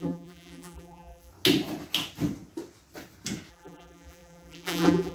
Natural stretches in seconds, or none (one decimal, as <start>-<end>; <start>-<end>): 1.3-3.5